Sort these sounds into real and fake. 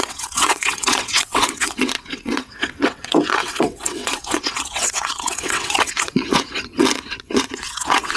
fake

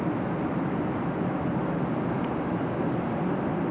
real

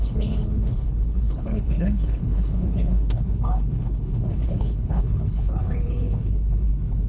fake